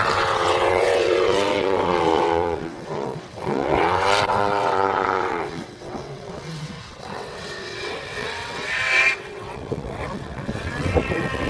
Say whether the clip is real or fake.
fake